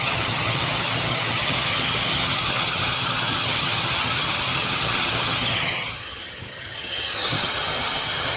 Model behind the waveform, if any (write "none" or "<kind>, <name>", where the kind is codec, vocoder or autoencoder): vocoder, HiFi-GAN